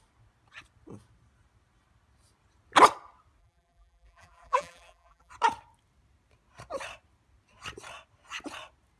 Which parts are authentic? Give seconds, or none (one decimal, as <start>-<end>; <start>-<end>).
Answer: 0.0-3.4; 5.3-9.0